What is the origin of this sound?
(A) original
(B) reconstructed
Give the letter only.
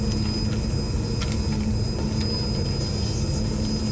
A